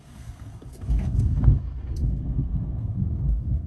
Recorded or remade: remade